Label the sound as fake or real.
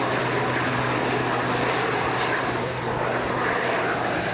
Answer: real